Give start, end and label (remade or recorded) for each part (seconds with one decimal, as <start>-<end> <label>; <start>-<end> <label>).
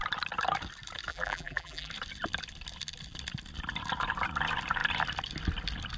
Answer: 0.0-1.1 recorded; 1.1-1.9 remade; 1.9-6.0 recorded